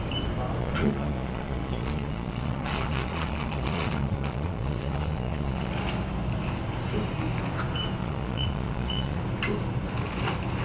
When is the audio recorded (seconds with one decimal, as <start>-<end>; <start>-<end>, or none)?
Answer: 0.0-0.6; 5.7-8.0; 9.2-10.6